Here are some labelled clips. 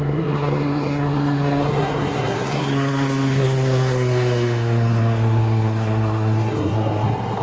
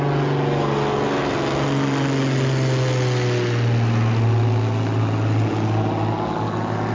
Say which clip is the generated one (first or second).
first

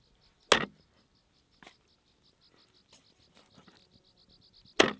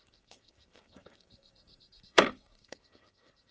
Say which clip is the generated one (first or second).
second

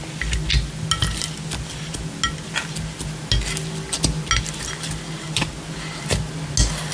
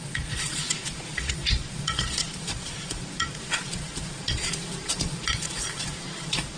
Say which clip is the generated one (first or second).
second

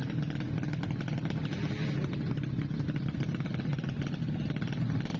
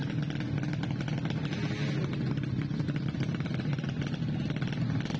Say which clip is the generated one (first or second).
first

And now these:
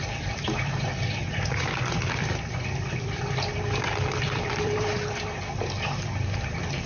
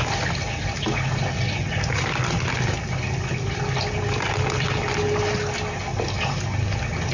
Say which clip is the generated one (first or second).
first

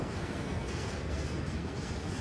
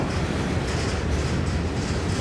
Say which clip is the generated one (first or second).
first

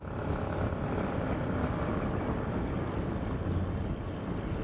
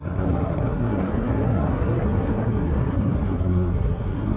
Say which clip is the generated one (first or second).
second